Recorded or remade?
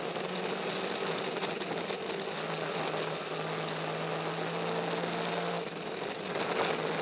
recorded